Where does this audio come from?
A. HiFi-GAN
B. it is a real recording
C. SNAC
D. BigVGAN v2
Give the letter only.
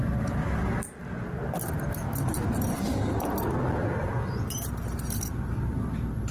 B